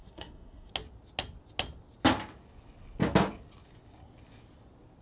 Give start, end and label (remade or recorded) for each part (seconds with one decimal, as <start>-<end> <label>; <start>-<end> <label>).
0.0-0.7 remade; 0.7-5.0 recorded